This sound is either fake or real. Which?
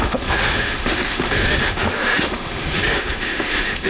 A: fake